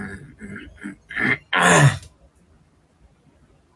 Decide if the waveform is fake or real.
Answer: real